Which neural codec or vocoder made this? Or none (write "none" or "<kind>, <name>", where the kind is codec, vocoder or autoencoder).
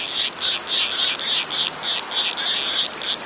none